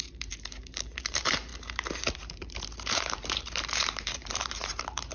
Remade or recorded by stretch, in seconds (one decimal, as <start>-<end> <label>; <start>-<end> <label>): 0.0-5.1 remade